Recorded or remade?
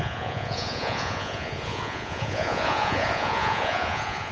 remade